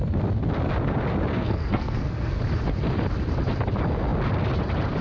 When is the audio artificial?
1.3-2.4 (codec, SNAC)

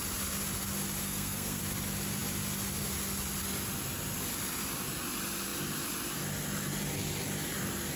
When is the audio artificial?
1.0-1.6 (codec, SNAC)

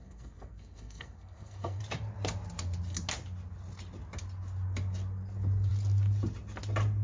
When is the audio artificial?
0.0-1.8 (codec, SNAC)

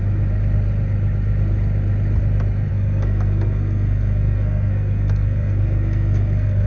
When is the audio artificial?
2.7-6.7 (codec, SNAC)

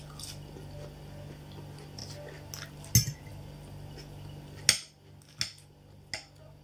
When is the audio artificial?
none